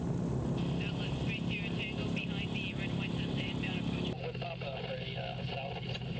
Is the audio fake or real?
real